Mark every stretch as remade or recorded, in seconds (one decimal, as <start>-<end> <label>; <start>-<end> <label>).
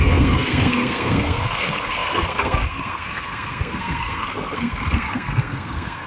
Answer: 0.0-6.1 remade